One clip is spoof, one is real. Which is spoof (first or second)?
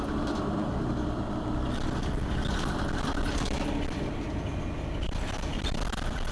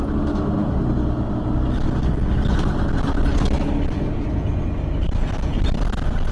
first